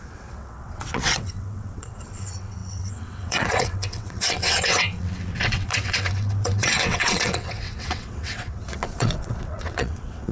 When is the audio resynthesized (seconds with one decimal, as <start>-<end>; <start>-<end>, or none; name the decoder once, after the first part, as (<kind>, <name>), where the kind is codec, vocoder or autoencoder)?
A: 0.0-10.3 (vocoder, WaveNeXt)